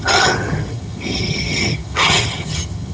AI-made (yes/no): yes